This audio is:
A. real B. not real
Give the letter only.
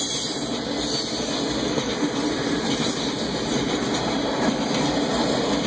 A